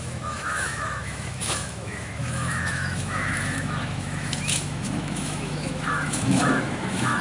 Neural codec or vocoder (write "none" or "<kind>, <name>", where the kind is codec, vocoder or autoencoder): autoencoder, DAC-VAE